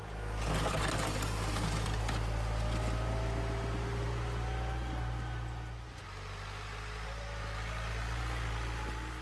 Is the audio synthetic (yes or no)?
no